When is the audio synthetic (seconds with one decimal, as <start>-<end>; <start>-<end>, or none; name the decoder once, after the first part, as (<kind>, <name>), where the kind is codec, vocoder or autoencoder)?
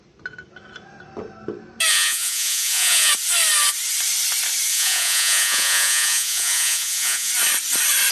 1.9-3.1 (vocoder, Vocos); 4.7-7.3